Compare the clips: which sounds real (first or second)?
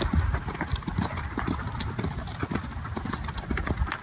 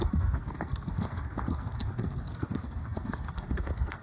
first